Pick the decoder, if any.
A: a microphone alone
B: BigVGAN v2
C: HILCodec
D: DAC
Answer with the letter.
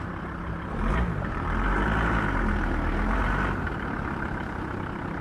B